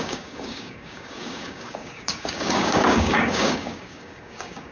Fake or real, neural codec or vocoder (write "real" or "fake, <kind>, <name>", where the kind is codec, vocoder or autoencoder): fake, codec, DAC